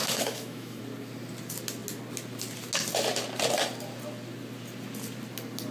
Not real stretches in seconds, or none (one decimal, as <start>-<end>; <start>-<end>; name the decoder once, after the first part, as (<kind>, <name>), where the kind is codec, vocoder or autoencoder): 0.0-0.8 (autoencoder, DAC-VAE)